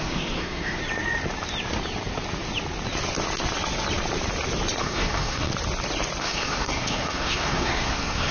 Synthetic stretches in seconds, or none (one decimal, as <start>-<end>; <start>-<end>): 0.0-0.8; 4.8-5.5; 6.2-8.3